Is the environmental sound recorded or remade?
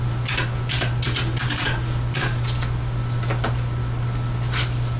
recorded